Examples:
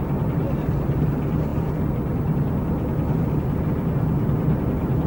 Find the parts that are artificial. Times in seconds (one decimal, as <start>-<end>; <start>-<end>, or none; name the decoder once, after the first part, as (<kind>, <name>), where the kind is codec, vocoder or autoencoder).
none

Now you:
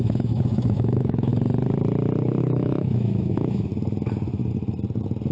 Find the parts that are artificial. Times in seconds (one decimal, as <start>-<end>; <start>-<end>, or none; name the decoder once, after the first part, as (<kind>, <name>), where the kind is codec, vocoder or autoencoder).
0.0-1.3 (autoencoder, DAC-VAE); 2.4-3.7

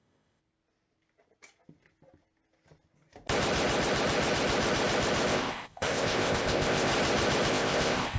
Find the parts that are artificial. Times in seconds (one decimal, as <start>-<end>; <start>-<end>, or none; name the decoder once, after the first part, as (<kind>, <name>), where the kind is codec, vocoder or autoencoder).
0.0-0.4 (codec, ZipCodec); 5.3-6.9; 7.5-8.2

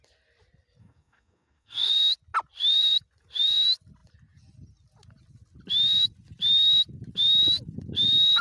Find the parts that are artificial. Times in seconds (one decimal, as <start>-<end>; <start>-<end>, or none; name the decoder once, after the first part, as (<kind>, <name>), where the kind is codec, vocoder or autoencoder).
0.8-1.9 (codec, DAC)

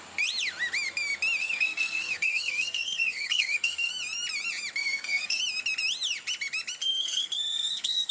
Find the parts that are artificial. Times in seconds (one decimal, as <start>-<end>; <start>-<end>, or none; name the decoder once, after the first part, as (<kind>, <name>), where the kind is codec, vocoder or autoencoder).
1.4-3.9 (codec, SNAC); 4.8-5.4; 6.8-8.1